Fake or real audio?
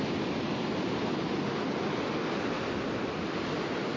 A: real